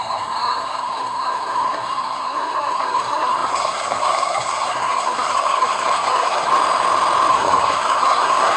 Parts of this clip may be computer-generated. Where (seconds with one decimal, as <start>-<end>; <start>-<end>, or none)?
0.0-6.5; 7.3-8.6